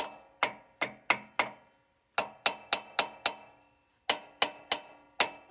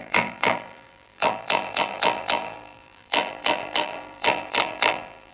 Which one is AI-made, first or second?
second